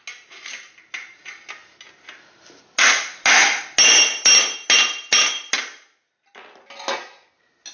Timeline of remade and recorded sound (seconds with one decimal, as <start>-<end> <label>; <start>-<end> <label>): 0.0-7.7 recorded